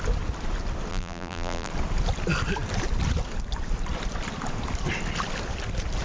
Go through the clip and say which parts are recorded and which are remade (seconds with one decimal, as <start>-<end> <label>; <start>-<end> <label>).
0.0-0.9 recorded; 0.9-1.7 remade; 1.7-6.0 recorded